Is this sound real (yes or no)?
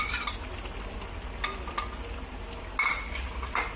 yes